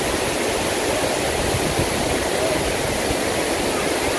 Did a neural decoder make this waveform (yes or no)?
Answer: yes